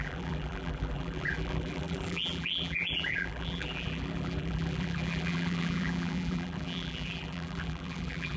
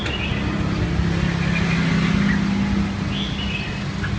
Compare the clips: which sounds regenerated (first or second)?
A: first